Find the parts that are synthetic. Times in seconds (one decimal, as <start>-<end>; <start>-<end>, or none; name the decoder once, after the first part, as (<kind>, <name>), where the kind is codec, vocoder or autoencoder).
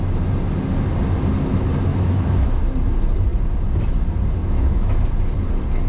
1.9-2.6 (autoencoder, DAC-VAE); 4.4-5.0